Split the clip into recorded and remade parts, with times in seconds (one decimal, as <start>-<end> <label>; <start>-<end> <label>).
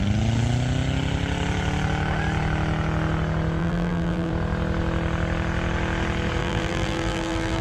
0.0-3.6 recorded; 3.6-4.3 remade; 4.3-6.4 recorded; 6.4-7.6 remade